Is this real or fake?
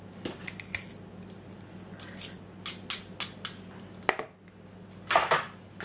real